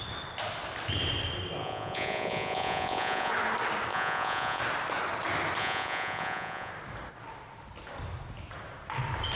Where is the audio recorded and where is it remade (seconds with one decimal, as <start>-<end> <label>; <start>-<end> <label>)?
0.0-1.6 recorded; 1.6-3.3 remade; 3.3-3.9 recorded; 3.9-4.6 remade; 4.6-5.6 recorded; 5.6-6.7 remade; 6.7-9.4 recorded